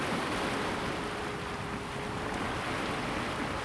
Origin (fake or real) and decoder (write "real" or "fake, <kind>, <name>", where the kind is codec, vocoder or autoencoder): real